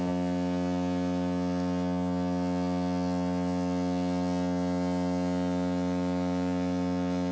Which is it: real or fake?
real